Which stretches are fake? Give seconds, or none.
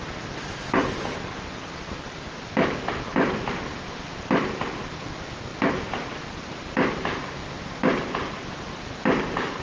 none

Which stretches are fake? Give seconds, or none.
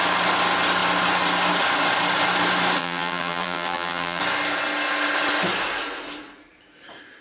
2.8-4.2 (vocoder, BigVGAN v2)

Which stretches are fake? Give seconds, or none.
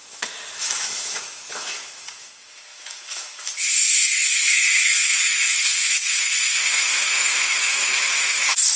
0.0-8.8 (autoencoder, DAC-VAE)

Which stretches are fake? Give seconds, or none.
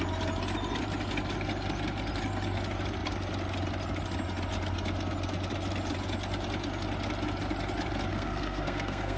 8.1-9.2 (codec, SNAC)